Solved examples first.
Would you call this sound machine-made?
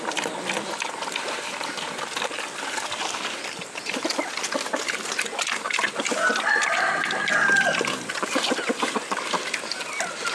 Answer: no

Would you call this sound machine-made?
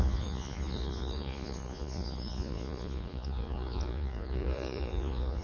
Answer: yes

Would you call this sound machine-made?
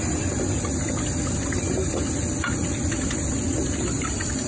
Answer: no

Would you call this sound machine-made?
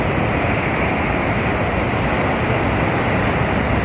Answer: no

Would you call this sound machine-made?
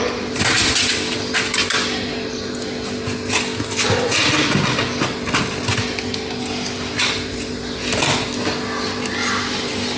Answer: no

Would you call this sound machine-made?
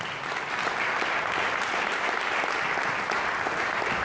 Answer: no